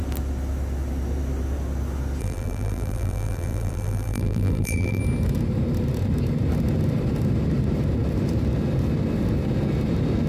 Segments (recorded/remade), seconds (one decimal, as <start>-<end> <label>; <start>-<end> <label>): 0.0-2.2 recorded; 2.2-5.0 remade; 5.0-10.3 recorded